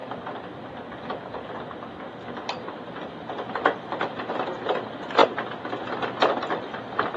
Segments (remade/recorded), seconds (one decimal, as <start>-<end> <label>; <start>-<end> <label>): 0.0-7.2 recorded